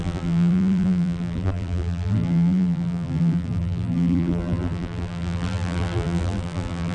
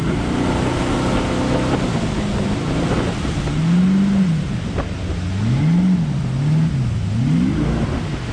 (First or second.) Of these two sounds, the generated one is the first